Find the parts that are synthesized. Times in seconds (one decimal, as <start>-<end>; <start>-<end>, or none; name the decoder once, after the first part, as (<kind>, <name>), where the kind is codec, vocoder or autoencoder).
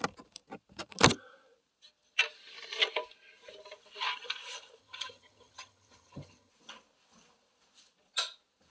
4.8-6.5 (vocoder, HiFi-GAN)